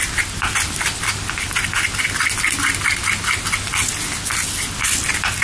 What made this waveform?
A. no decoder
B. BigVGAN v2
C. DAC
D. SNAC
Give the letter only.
A